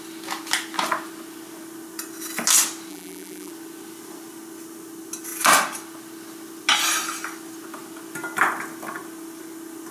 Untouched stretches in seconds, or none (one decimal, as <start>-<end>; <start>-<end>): 0.0-2.9; 3.5-9.9